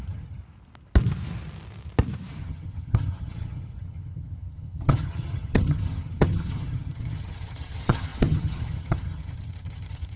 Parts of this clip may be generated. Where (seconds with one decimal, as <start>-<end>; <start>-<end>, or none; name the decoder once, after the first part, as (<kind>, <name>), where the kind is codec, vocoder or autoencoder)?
0.0-0.4 (vocoder, HiFi-GAN); 2.4-10.2